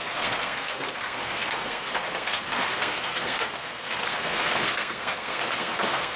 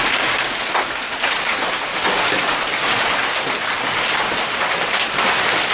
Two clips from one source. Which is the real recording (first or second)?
second